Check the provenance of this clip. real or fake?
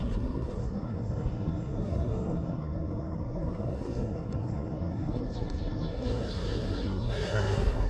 fake